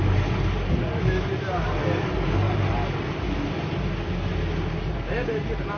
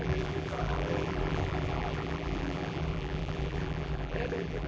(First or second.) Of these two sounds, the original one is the first